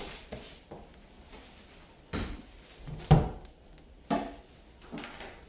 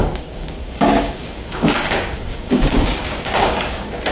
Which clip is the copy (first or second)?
second